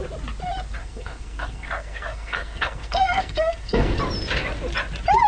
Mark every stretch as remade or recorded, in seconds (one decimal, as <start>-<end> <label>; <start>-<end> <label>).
0.0-0.8 recorded; 0.8-4.0 remade; 4.0-5.3 recorded